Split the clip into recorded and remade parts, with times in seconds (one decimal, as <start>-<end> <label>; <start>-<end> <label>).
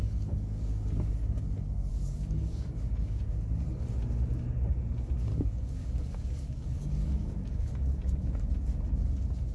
0.0-1.1 remade; 1.1-1.9 recorded; 1.9-3.2 remade; 3.2-5.3 recorded; 5.3-8.5 remade; 8.5-9.5 recorded